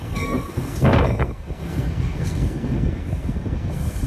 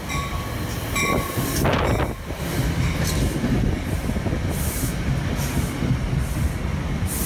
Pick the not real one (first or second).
first